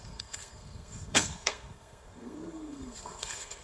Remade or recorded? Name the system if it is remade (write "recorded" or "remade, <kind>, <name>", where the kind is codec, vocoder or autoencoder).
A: remade, codec, SNAC